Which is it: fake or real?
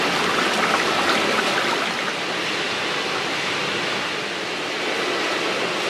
real